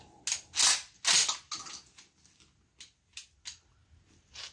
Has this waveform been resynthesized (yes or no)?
no